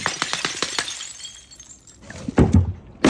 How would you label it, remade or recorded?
recorded